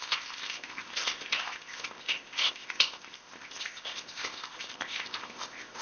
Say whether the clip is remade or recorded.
remade